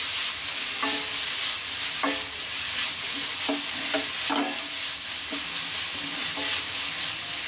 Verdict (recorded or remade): recorded